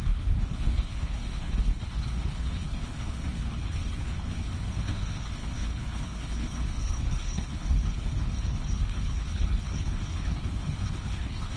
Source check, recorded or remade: remade